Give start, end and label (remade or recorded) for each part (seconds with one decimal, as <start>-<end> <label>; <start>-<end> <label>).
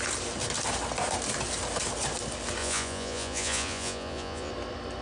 0.0-2.6 recorded; 2.6-4.5 remade; 4.5-5.0 recorded